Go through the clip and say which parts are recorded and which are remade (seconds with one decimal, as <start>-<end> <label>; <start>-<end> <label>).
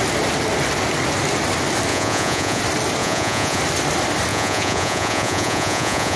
0.0-1.9 recorded; 1.9-2.6 remade; 2.6-3.0 recorded; 3.0-3.6 remade; 3.6-4.3 recorded; 4.3-6.2 remade